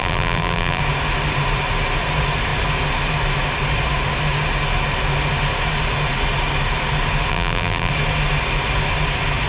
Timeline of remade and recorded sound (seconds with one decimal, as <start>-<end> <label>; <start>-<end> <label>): 0.0-0.8 remade; 0.8-7.3 recorded; 7.3-7.9 remade; 7.9-9.5 recorded